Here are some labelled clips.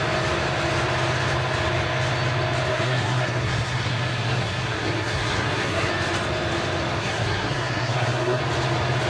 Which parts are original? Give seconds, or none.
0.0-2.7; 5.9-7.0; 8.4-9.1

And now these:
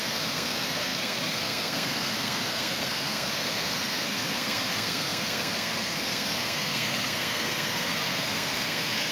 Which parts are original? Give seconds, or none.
none

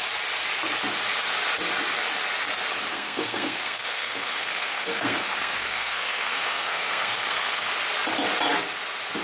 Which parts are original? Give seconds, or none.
0.0-2.9; 7.7-9.2